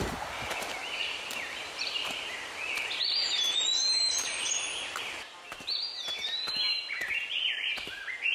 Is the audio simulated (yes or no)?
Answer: yes